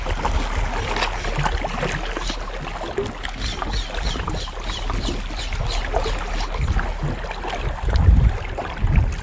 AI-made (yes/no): no